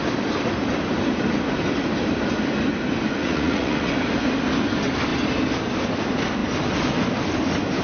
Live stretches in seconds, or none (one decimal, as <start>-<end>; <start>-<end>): 0.0-3.2; 3.9-7.8